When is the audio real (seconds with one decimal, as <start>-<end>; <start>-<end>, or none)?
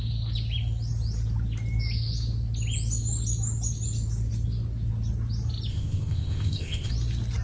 0.0-5.7; 6.9-7.4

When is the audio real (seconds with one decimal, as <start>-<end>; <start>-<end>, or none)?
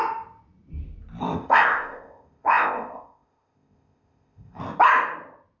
0.0-1.2; 4.6-5.6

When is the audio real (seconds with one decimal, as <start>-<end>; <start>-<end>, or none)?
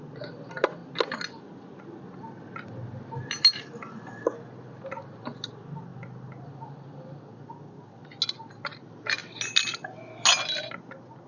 0.0-11.3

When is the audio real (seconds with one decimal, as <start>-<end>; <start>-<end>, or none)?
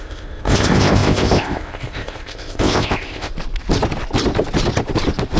3.3-5.4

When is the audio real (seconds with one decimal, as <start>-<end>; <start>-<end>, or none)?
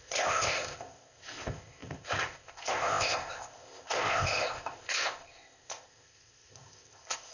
none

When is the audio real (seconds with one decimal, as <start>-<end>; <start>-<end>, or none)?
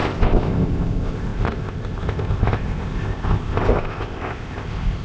none